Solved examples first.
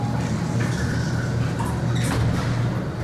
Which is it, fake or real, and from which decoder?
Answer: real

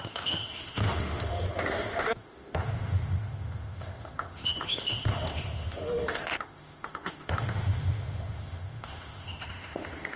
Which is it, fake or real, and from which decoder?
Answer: fake, autoencoder, DAC-VAE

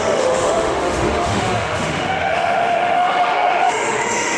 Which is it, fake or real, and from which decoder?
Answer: fake, autoencoder, DAC-VAE